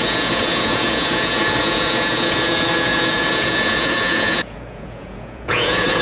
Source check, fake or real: fake